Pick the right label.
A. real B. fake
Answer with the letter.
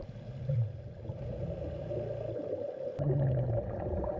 A